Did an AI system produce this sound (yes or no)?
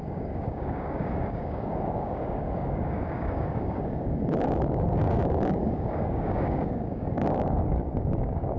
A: yes